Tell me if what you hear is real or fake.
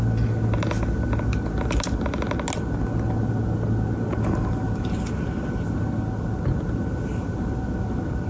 real